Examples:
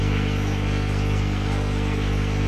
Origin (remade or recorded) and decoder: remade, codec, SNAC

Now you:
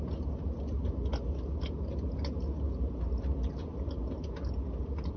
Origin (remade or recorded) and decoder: recorded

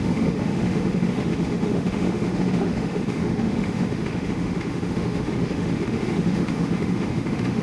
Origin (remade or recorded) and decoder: remade, autoencoder, DAC-VAE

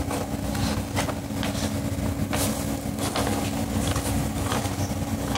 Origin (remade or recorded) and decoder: recorded